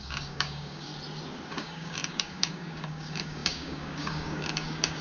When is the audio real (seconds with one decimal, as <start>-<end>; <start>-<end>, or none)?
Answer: 0.9-1.5